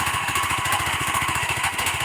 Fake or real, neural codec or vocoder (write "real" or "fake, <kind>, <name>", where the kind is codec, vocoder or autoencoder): fake, autoencoder, DAC-VAE